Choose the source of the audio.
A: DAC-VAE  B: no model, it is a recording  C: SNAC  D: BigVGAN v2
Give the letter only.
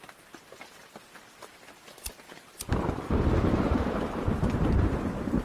D